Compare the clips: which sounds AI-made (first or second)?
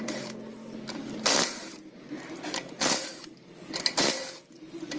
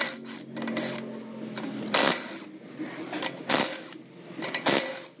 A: first